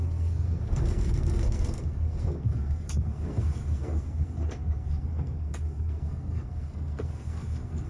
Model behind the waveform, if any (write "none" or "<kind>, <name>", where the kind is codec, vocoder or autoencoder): codec, SNAC